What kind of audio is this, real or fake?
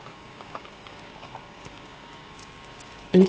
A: fake